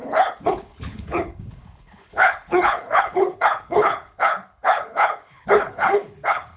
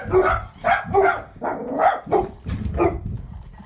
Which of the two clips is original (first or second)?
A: second